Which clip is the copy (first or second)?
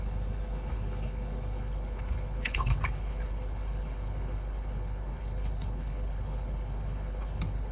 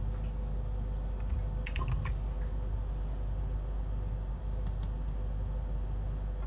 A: first